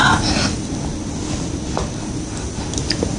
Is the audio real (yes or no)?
yes